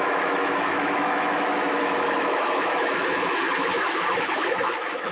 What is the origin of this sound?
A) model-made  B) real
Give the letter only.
A